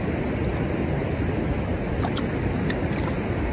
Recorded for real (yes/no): yes